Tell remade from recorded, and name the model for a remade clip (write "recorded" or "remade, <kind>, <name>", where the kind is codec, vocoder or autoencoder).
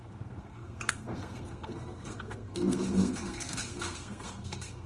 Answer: remade, codec, SNAC